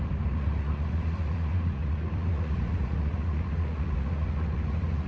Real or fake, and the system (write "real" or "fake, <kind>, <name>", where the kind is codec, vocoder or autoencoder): fake, vocoder, Vocos